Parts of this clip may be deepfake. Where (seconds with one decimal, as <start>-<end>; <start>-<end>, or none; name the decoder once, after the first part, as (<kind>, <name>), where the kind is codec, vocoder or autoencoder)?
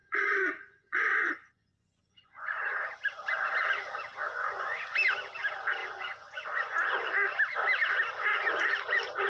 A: 0.0-2.6 (vocoder, Vocos); 4.2-4.8; 5.8-7.1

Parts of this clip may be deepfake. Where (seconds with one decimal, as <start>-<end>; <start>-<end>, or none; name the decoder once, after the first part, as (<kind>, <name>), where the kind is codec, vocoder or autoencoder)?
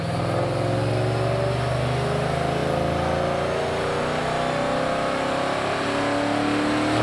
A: none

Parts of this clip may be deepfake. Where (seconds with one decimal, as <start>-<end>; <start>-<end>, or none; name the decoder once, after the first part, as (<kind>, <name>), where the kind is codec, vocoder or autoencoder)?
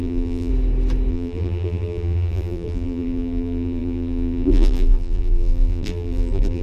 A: 0.0-0.5 (vocoder, BigVGAN v2); 1.1-6.6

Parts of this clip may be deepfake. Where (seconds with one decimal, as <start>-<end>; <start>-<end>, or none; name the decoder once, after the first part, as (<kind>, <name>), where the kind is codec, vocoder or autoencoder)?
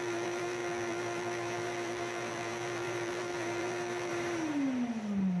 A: 0.0-4.1 (vocoder, BigVGAN v2)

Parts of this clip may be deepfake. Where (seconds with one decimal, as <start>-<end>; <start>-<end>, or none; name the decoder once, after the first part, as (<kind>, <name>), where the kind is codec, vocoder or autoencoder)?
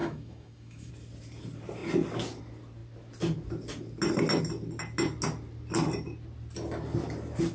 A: 0.0-0.9 (autoencoder, DAC-VAE)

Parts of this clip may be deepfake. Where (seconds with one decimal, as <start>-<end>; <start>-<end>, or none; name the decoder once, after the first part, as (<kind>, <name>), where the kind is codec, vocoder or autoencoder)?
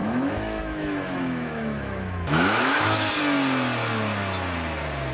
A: 0.0-3.1 (autoencoder, DAC-VAE)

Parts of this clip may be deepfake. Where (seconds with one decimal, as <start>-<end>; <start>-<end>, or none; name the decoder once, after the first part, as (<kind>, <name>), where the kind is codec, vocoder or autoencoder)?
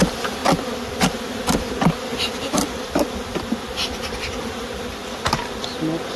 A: 0.0-0.4 (vocoder, BigVGAN v2); 2.5-3.3; 4.4-5.0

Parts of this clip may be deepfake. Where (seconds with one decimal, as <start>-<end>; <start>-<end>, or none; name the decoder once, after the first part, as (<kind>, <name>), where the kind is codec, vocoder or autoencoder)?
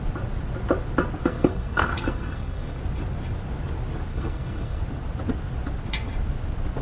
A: 1.2-2.8 (codec, SNAC); 4.1-4.8